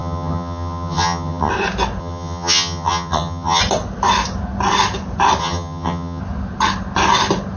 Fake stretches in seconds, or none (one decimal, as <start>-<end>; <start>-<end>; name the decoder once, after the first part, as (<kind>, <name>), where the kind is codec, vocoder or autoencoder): 0.0-1.5 (vocoder, HiFi-GAN); 2.0-3.6; 5.4-6.2